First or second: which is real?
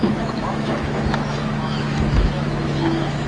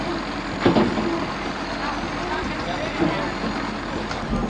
second